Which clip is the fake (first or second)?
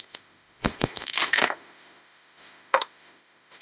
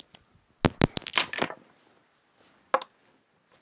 first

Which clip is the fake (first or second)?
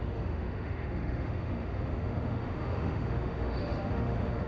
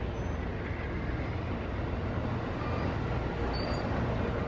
first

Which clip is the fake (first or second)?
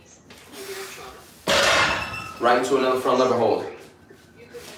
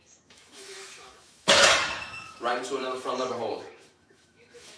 second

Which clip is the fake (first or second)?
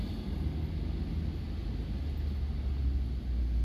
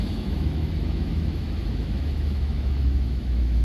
second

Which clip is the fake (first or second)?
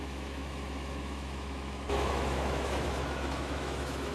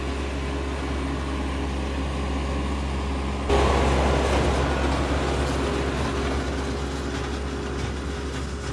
first